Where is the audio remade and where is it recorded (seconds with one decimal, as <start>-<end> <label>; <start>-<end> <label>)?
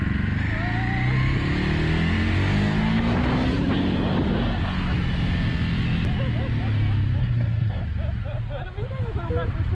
0.0-7.2 recorded; 7.2-7.8 remade; 7.8-9.7 recorded